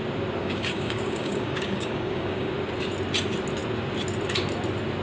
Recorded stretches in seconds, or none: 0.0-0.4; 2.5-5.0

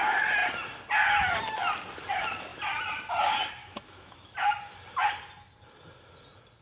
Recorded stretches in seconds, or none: 0.0-3.6; 4.3-6.6

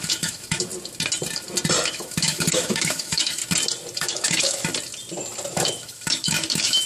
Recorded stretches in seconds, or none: 0.7-1.9; 3.4-4.0; 4.7-5.5

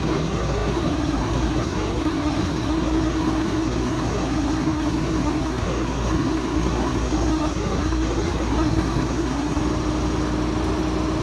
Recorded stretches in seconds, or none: 9.6-11.2

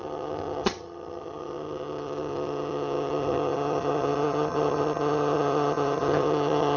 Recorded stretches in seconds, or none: none

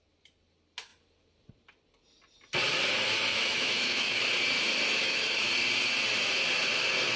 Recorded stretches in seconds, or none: 0.0-3.3; 4.2-5.0; 5.5-7.2

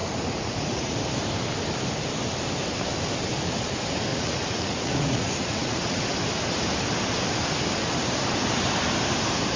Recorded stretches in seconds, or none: 1.0-4.1; 6.0-9.6